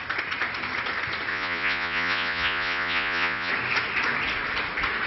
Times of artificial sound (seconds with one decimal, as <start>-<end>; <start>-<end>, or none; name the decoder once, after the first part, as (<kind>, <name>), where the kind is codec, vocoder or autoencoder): 1.3-3.5 (vocoder, Vocos)